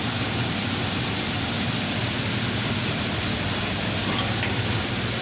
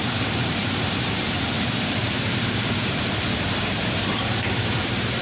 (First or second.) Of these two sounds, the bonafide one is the first